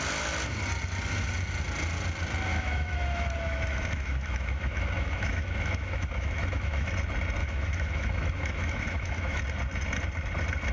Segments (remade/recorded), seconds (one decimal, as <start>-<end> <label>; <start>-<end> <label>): 0.0-2.5 recorded; 2.5-6.9 remade; 6.9-7.4 recorded; 7.4-9.4 remade; 9.4-10.7 recorded